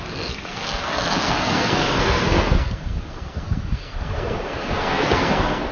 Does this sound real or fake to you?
fake